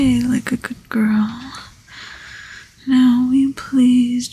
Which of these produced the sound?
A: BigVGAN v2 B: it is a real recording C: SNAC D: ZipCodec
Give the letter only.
B